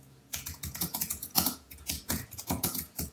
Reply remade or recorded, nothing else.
remade